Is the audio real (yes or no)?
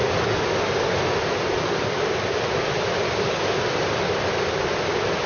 yes